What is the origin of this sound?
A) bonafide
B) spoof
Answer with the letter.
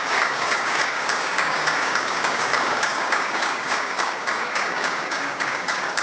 B